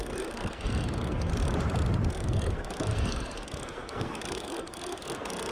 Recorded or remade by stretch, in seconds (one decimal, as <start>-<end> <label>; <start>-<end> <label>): 0.0-1.3 remade; 1.3-2.1 recorded; 2.1-5.5 remade